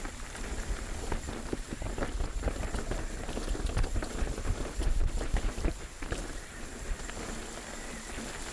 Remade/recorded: recorded